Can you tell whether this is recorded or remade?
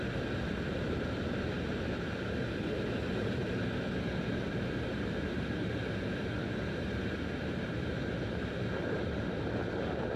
remade